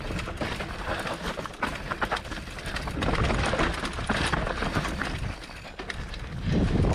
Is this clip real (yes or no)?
yes